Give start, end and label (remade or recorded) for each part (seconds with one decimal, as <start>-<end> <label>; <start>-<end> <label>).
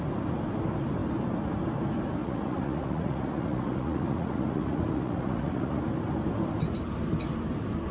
0.0-2.2 recorded; 2.2-5.8 remade; 5.8-7.9 recorded